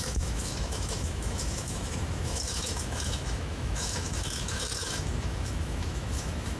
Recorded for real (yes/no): no